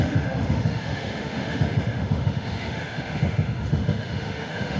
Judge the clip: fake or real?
fake